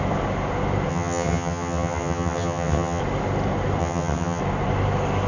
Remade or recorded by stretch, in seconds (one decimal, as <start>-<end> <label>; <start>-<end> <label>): 0.0-0.9 recorded; 0.9-3.0 remade; 3.0-3.8 recorded; 3.8-4.4 remade; 4.4-5.3 recorded